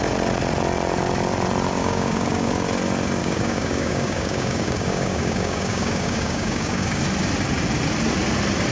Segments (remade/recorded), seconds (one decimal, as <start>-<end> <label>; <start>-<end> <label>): 0.0-1.8 recorded; 1.8-2.5 remade; 2.5-3.2 recorded; 3.2-7.0 remade; 7.0-8.7 recorded